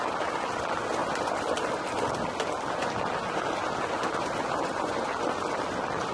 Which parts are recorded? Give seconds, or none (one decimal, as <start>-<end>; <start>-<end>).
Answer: 0.0-6.1